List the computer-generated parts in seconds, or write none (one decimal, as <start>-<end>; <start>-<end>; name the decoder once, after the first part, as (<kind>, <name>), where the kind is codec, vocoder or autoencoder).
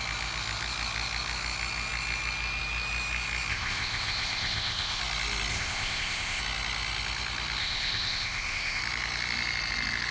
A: 3.5-5.0 (codec, ZipCodec); 5.5-6.4; 7.6-8.8